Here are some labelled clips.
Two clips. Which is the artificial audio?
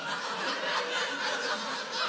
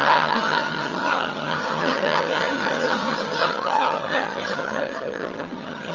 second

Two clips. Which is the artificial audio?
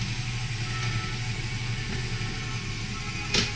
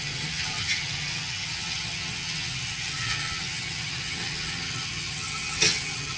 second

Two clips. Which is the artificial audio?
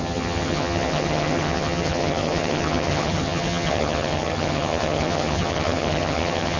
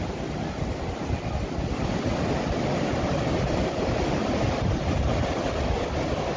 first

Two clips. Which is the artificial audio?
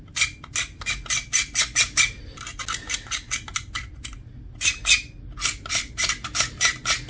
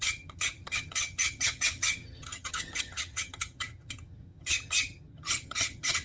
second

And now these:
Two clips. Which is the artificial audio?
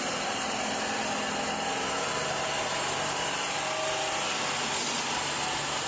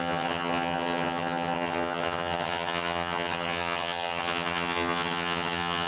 second